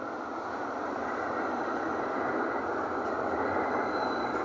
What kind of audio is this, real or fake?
real